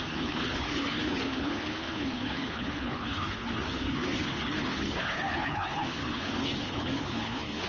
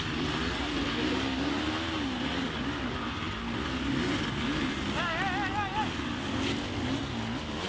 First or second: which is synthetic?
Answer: first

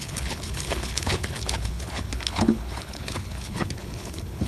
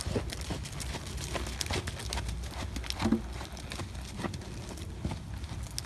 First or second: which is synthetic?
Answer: first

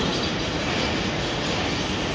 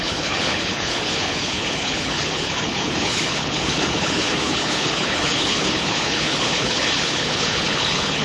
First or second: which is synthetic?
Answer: second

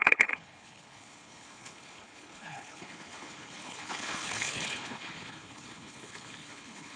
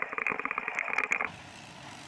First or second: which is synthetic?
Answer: first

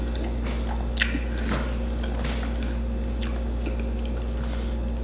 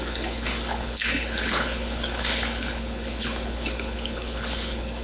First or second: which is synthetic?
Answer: second